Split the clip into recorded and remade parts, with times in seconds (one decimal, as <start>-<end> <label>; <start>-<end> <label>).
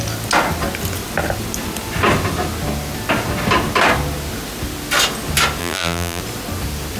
0.0-5.6 recorded; 5.6-6.2 remade; 6.2-7.0 recorded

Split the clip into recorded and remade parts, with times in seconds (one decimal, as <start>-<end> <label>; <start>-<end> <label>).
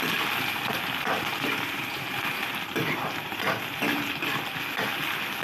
0.0-1.3 recorded; 1.3-4.1 remade; 4.1-5.4 recorded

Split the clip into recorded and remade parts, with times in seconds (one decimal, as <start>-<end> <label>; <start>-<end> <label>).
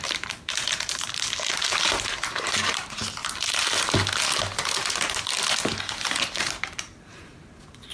0.0-3.2 remade; 3.2-6.3 recorded; 6.3-7.9 remade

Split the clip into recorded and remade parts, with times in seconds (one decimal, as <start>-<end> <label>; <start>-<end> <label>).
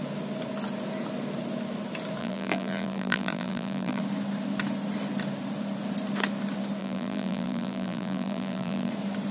0.0-2.2 recorded; 2.2-4.0 remade; 4.0-6.8 recorded; 6.8-8.9 remade; 8.9-9.3 recorded